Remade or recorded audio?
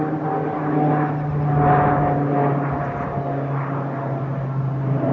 recorded